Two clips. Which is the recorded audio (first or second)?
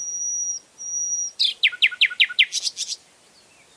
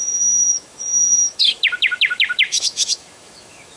first